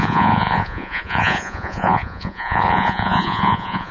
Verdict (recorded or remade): remade